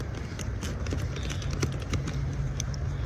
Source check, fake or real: real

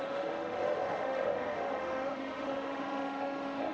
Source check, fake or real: fake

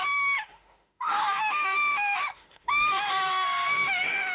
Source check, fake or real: fake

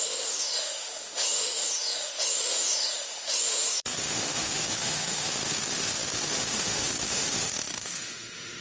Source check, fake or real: fake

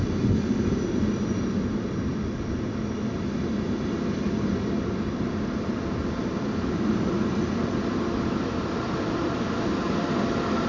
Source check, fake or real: real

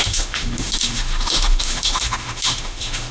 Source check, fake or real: fake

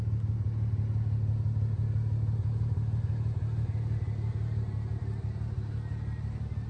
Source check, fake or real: real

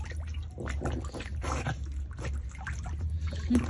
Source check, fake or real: real